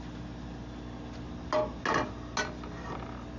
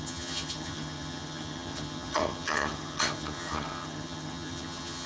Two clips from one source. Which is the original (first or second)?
first